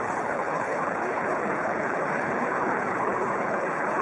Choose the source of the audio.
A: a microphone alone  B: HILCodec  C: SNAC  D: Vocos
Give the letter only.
B